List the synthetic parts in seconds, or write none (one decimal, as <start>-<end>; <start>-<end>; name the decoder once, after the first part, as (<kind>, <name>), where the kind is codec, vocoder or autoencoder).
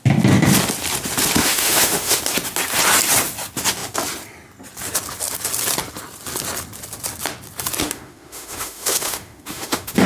1.4-2.2 (autoencoder, DAC-VAE); 7.8-10.1